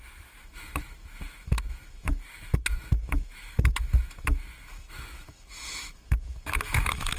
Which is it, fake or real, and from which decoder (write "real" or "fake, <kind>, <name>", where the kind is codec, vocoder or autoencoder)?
fake, autoencoder, DAC-VAE